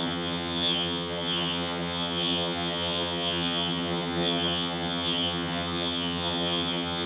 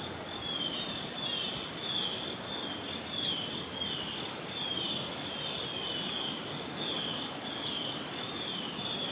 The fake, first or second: first